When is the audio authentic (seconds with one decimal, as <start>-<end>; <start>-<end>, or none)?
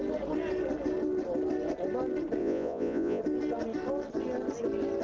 0.0-2.4; 3.2-5.0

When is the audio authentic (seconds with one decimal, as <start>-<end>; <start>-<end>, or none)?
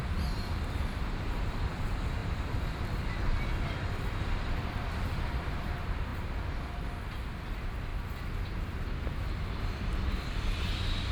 7.9-9.5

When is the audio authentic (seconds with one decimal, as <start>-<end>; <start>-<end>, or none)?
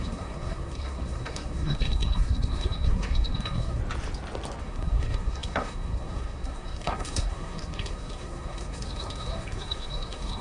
3.8-4.6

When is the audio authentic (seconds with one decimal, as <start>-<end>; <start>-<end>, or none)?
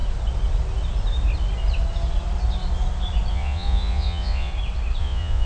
0.0-3.3; 4.5-5.0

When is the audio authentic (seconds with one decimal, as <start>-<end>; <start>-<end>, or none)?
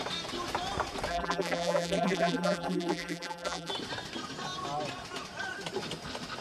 0.0-1.1; 3.7-6.4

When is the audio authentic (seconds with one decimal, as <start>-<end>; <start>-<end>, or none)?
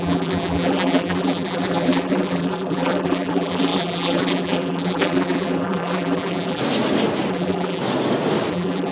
6.6-7.3; 7.8-8.5